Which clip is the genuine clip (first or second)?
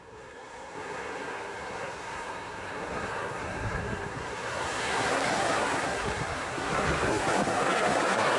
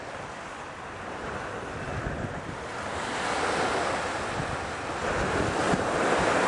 second